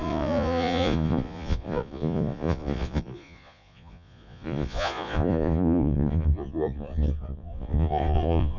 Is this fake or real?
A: fake